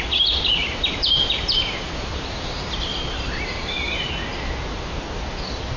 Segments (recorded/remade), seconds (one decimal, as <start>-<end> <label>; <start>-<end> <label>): 0.0-0.6 recorded; 0.6-4.1 remade; 4.1-5.8 recorded